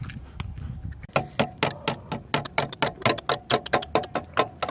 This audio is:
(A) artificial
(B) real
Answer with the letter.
B